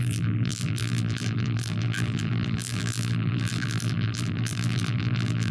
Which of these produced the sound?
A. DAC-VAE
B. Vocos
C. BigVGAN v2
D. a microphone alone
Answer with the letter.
C